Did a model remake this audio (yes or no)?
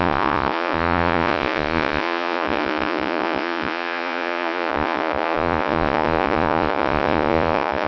yes